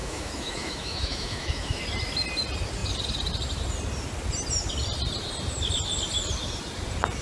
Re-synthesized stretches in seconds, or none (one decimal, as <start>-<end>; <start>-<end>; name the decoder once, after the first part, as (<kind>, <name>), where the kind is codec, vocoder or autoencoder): 0.0-1.8 (autoencoder, DAC-VAE)